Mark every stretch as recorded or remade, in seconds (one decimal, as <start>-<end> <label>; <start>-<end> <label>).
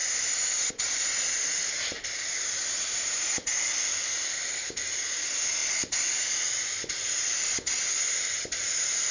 0.0-9.1 recorded